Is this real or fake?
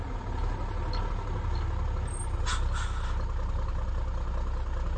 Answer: real